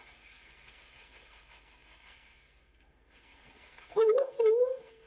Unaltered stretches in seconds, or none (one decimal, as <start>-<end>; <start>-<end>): none